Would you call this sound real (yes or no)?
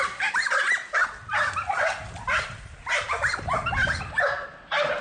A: yes